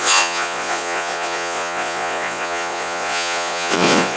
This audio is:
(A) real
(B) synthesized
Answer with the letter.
B